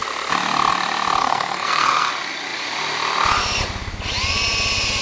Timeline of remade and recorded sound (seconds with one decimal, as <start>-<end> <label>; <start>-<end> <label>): 0.0-1.2 recorded; 1.2-2.1 remade; 2.1-5.0 recorded